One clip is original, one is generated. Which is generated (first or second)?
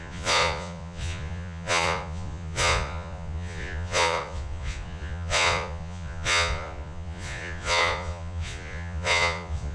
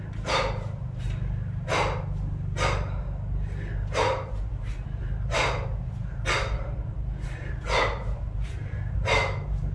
first